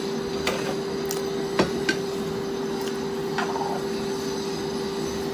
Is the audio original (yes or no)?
yes